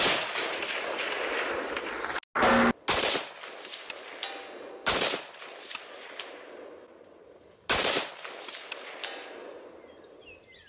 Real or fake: real